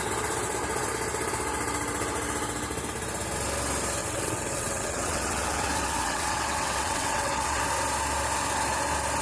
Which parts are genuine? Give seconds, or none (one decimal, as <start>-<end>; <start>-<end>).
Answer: 0.0-4.0; 7.6-9.2